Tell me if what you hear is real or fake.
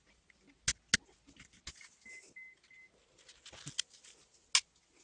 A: real